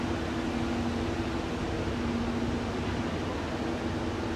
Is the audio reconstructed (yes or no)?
no